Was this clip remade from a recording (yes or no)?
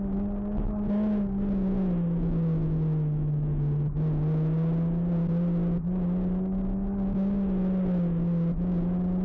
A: no